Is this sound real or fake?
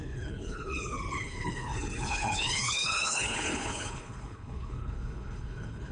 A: fake